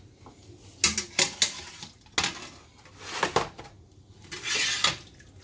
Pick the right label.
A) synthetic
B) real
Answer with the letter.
B